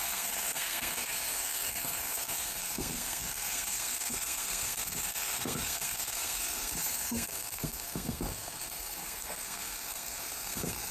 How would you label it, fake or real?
fake